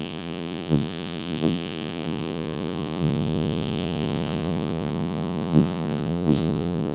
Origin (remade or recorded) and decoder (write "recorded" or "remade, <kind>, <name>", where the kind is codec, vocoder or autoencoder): remade, vocoder, Vocos